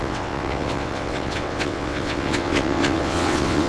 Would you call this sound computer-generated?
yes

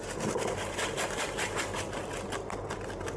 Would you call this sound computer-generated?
no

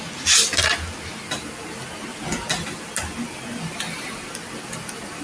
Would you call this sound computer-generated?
no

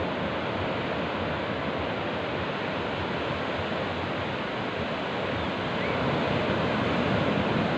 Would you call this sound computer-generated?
no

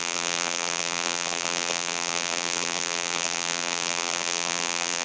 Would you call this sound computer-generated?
yes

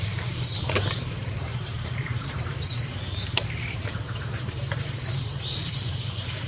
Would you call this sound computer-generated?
yes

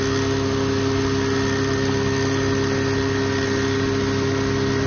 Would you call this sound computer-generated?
no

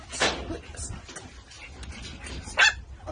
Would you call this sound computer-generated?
no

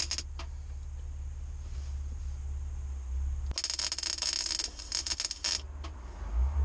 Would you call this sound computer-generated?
no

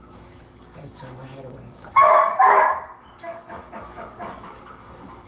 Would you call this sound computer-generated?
yes